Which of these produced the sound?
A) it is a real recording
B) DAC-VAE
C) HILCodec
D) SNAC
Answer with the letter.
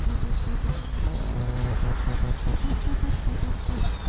A